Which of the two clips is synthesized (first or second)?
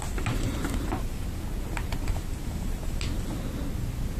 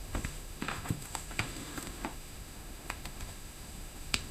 second